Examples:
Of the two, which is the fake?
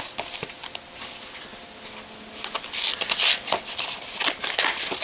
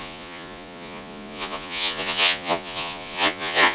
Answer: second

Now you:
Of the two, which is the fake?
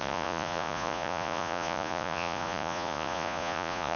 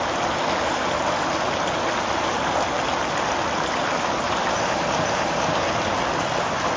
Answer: first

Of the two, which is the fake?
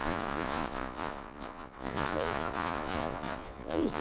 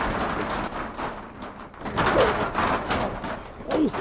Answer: first